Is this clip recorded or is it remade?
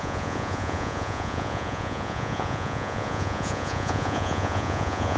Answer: remade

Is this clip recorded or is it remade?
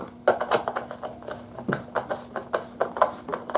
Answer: recorded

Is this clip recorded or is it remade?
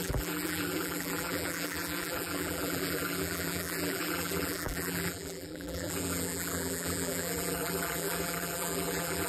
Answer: remade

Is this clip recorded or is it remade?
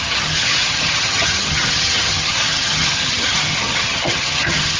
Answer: remade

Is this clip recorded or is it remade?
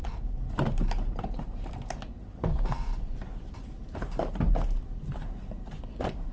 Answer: remade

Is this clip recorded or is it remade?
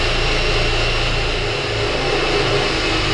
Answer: recorded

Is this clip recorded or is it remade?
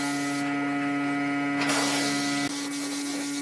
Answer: recorded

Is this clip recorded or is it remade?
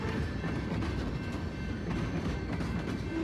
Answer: recorded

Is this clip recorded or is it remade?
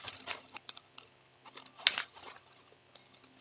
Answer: recorded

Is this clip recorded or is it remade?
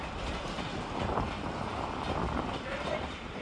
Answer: remade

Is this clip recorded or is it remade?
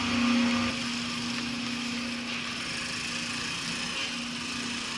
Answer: recorded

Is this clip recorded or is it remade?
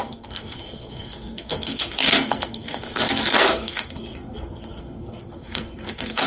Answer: remade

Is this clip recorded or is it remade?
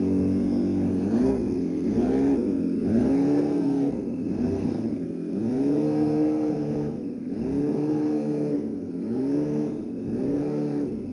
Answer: remade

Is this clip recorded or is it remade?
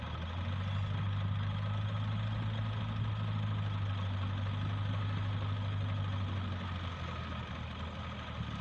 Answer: recorded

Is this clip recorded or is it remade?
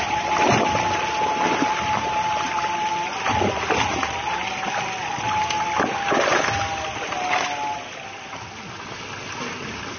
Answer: recorded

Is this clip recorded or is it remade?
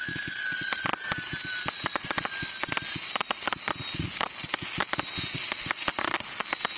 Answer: recorded